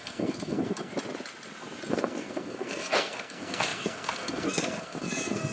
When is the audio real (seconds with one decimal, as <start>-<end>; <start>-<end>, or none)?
0.9-1.9